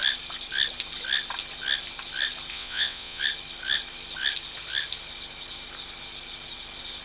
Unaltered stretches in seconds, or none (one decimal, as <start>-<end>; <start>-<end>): 0.0-2.5; 3.2-7.0